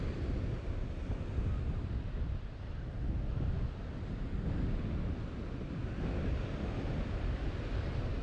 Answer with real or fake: real